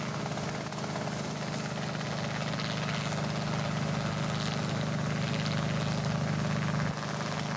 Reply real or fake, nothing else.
real